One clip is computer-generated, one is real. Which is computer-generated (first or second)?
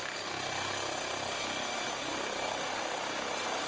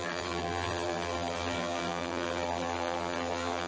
second